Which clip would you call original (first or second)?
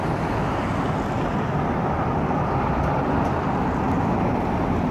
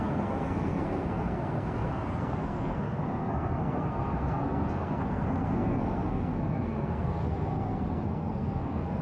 first